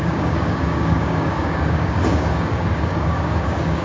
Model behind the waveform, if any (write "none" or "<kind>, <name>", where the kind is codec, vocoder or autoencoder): codec, DAC